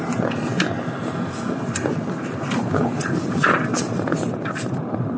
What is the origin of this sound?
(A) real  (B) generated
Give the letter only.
A